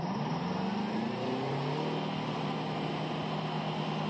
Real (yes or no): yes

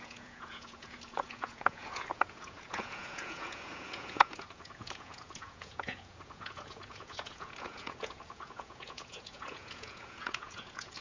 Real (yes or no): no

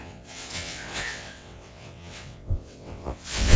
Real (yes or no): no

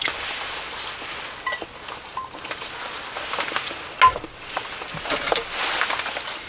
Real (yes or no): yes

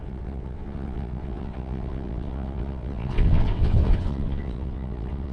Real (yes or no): no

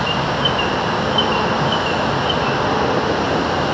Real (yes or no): yes